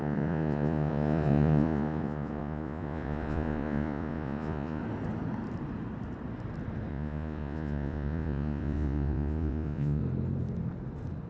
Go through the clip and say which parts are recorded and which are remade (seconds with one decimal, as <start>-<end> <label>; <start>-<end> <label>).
0.0-4.8 remade; 4.8-6.9 recorded; 6.9-10.0 remade; 10.0-11.3 recorded